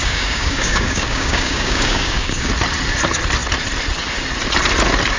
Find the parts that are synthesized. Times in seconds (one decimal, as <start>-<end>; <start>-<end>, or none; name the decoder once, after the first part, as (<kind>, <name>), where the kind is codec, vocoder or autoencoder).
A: 0.0-2.5 (codec, DAC)